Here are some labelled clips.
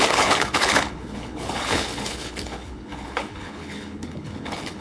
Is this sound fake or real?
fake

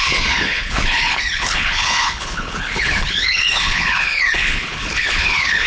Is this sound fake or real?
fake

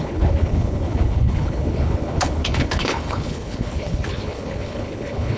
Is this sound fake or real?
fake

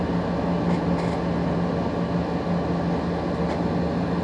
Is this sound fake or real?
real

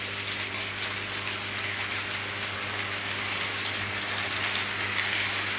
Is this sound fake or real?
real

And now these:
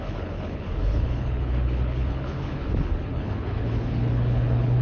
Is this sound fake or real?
fake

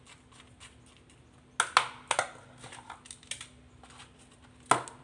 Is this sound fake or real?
real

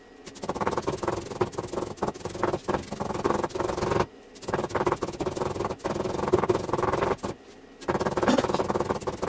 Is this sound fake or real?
real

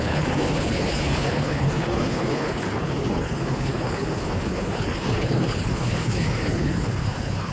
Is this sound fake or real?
fake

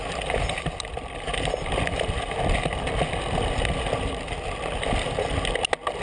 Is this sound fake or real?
real